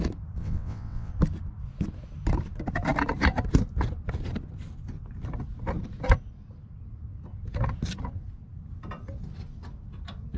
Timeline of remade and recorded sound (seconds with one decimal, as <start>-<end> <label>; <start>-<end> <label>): 0.0-0.4 recorded; 0.4-1.1 remade; 1.1-10.4 recorded